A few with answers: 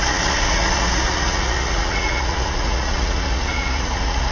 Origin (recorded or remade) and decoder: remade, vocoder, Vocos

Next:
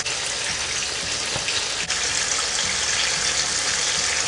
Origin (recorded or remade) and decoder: recorded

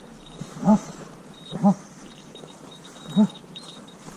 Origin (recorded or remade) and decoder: remade, vocoder, BigVGAN v2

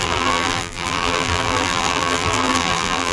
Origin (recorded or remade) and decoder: remade, vocoder, BigVGAN v2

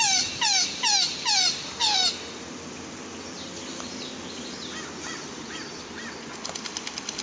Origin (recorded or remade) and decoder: recorded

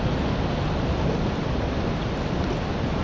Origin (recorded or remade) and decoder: recorded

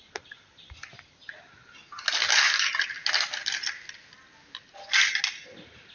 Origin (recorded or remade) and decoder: recorded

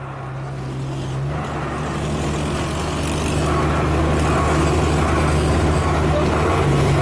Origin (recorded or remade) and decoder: recorded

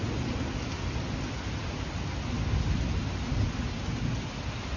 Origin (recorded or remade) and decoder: recorded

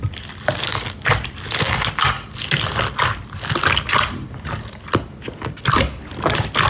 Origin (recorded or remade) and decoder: recorded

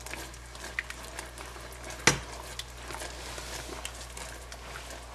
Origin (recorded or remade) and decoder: recorded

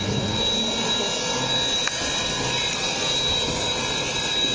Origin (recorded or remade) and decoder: recorded